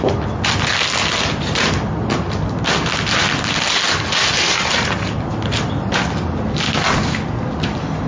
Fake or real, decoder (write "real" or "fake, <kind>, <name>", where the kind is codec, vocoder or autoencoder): real